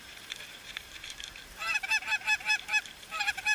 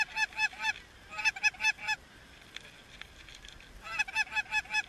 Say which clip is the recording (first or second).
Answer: second